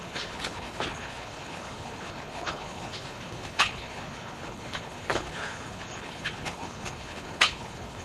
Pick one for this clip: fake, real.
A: fake